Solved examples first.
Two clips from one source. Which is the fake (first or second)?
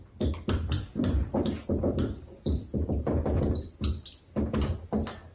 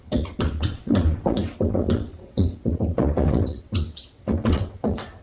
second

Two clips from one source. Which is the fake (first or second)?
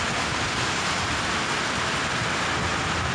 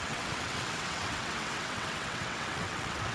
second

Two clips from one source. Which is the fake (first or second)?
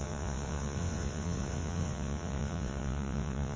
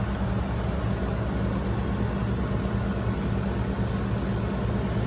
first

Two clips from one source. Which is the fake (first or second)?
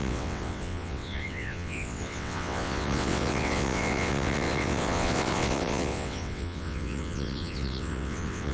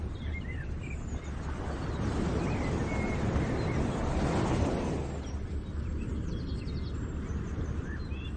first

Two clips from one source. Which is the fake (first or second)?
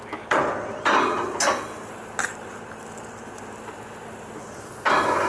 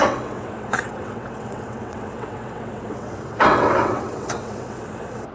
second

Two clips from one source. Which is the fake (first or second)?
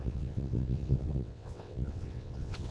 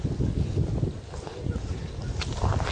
first